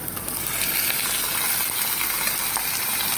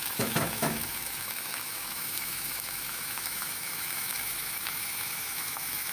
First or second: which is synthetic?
second